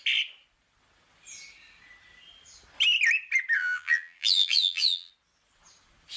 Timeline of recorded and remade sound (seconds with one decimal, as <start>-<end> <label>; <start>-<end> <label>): 0.0-3.6 recorded; 3.6-5.1 remade; 5.1-6.2 recorded